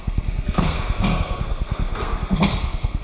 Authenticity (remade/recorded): remade